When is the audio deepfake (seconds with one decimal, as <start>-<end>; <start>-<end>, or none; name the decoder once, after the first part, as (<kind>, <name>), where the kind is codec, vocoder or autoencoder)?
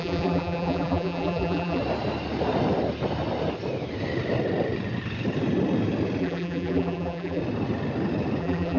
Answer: 0.0-1.8 (vocoder, BigVGAN v2); 6.2-7.4; 8.4-8.8